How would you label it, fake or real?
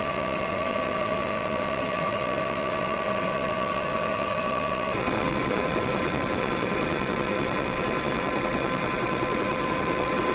fake